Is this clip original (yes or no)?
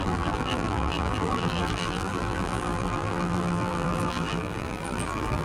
no